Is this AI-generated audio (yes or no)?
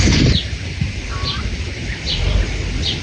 no